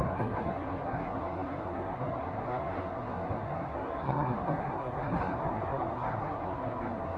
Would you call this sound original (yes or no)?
no